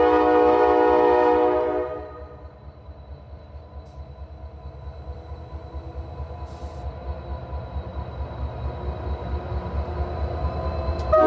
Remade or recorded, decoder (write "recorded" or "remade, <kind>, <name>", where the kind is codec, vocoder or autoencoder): recorded